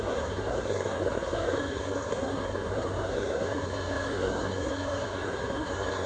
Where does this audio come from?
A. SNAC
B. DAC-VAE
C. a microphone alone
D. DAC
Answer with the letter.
A